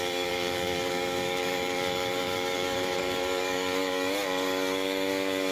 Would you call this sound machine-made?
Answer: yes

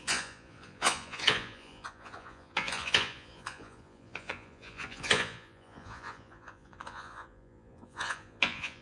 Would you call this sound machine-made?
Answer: yes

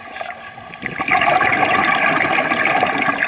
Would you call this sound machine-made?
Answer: no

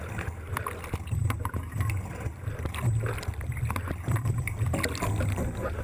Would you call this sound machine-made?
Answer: no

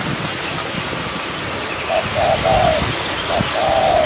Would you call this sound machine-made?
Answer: no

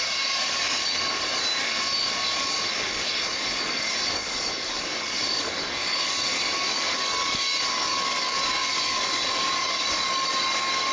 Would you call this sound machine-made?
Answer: yes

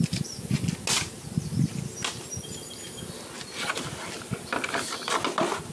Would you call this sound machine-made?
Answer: no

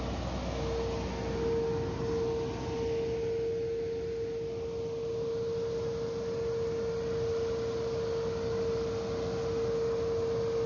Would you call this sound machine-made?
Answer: no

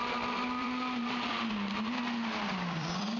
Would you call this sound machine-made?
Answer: yes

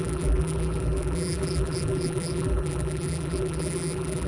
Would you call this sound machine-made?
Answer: yes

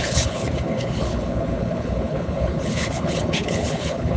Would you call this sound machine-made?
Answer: yes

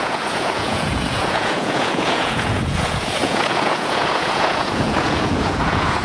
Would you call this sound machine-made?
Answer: yes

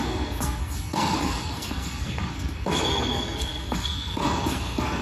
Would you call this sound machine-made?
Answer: yes